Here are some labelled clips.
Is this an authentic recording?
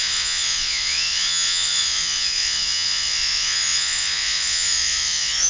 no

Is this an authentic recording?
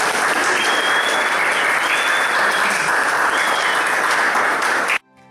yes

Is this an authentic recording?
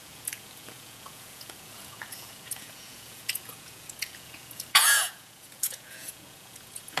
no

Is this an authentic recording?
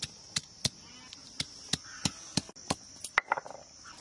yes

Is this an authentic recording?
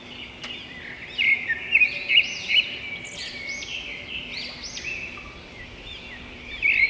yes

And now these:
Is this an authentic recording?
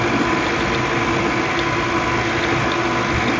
yes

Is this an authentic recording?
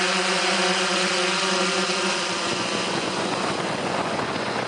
no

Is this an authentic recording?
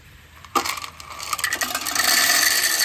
yes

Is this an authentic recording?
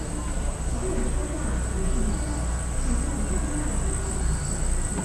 yes